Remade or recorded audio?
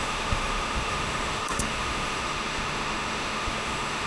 remade